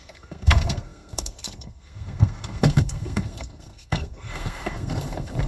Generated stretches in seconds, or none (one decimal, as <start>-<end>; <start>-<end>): 0.0-5.5